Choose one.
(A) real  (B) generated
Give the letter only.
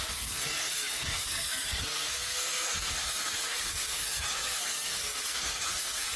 B